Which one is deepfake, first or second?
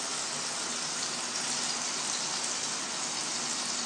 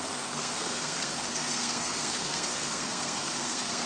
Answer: second